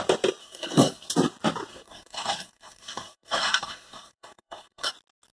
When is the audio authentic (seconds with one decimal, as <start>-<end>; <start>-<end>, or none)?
0.0-0.4; 1.1-1.7; 4.9-5.4